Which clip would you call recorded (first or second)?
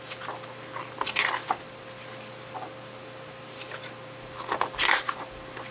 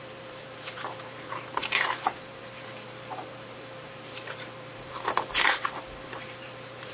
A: first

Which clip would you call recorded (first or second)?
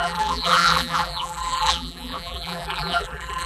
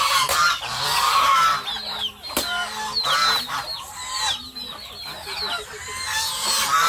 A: second